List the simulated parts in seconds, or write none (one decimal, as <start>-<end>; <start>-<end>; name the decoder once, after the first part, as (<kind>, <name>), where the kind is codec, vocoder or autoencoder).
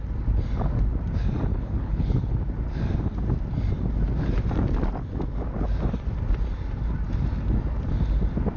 1.5-2.4 (codec, HILCodec)